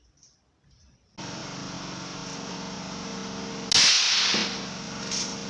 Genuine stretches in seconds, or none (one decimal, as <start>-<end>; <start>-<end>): 0.0-5.5